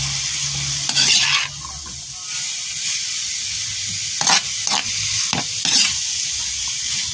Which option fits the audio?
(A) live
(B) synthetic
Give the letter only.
A